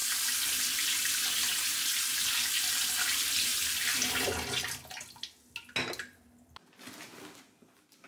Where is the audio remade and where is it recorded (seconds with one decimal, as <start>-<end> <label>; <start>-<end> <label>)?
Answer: 0.0-8.1 recorded